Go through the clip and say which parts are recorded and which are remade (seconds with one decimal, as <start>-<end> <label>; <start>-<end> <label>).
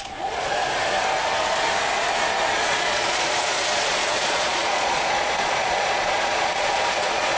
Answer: 0.0-0.6 remade; 0.6-2.5 recorded; 2.5-7.4 remade